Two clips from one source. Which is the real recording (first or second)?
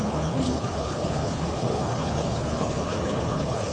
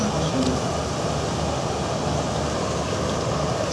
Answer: second